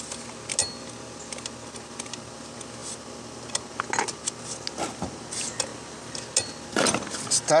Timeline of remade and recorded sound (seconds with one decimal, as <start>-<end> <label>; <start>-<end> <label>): 0.0-7.6 recorded